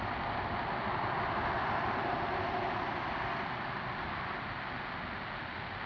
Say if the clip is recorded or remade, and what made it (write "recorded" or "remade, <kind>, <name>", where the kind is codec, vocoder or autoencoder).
recorded